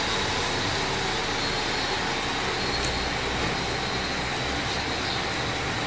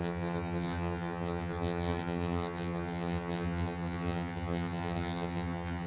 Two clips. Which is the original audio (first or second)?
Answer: first